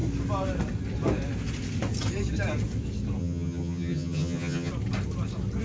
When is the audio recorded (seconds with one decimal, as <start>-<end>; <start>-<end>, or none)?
0.0-3.2; 4.7-5.6